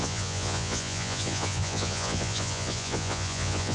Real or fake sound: fake